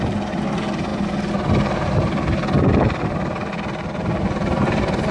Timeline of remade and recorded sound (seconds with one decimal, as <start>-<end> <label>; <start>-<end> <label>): 0.0-5.1 recorded